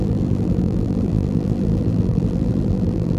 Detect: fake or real fake